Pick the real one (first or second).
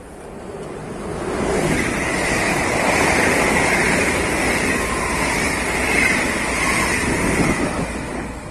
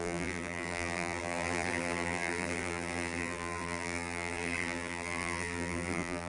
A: first